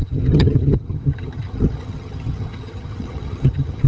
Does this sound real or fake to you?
fake